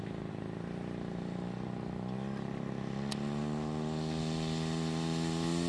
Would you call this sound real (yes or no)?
yes